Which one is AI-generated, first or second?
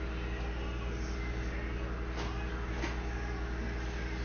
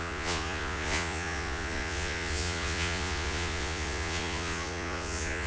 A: second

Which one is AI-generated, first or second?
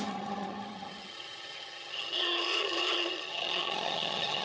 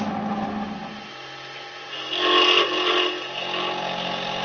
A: first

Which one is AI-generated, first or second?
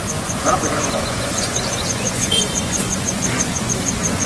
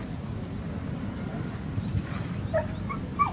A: first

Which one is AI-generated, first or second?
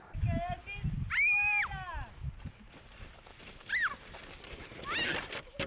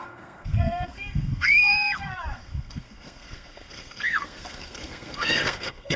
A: second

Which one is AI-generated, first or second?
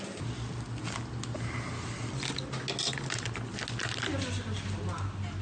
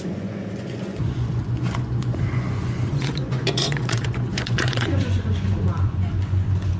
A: second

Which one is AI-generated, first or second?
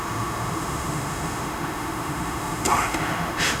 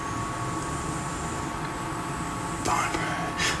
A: first